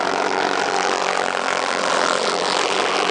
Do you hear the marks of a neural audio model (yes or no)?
yes